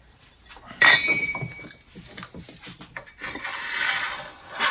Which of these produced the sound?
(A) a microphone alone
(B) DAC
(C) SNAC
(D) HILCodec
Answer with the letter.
A